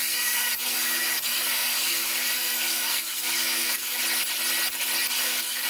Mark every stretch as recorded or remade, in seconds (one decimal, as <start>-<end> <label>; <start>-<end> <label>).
0.0-4.0 remade; 4.0-5.2 recorded; 5.2-5.7 remade